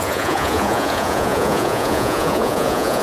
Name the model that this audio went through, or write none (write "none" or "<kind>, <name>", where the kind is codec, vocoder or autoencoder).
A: vocoder, Vocos